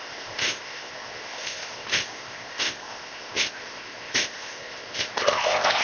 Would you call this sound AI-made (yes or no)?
yes